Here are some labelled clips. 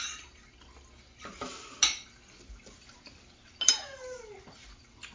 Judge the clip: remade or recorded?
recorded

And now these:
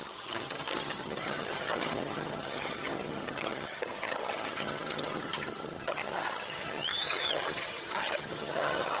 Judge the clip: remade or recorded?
remade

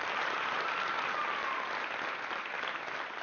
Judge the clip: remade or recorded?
recorded